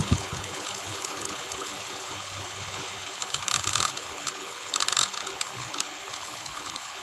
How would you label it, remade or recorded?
remade